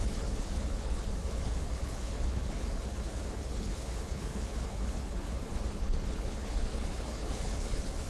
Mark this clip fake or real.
fake